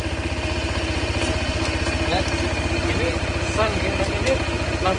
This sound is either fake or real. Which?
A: real